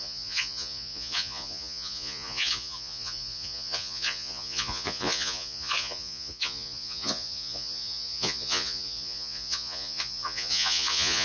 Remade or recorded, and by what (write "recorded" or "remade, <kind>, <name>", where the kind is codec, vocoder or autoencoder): remade, vocoder, Vocos